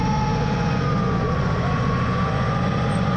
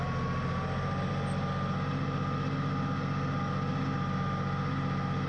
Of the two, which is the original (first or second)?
second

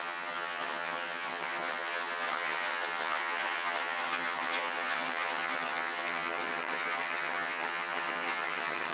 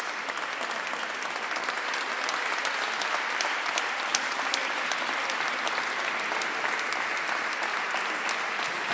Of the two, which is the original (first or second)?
second